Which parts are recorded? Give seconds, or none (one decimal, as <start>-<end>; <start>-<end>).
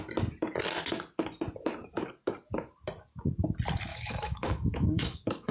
0.0-3.9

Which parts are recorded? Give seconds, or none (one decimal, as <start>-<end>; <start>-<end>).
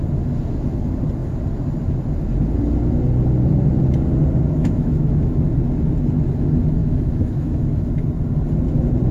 0.0-4.6; 5.4-6.8; 7.9-9.1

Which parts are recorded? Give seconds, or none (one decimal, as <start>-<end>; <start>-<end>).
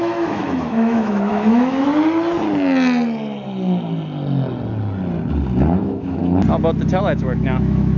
1.9-5.8; 6.2-7.0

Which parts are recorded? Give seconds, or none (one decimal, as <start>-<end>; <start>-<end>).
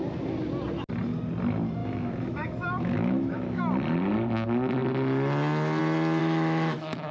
0.0-1.8; 3.6-6.2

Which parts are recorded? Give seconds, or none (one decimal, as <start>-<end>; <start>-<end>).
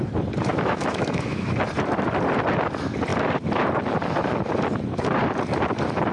0.0-0.5; 1.5-6.1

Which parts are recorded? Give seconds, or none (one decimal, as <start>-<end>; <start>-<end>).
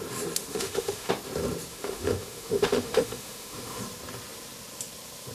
0.0-0.5; 1.1-1.7; 3.8-5.3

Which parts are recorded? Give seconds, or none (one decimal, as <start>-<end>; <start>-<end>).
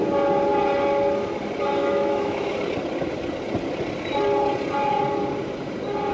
0.0-1.8; 2.5-6.1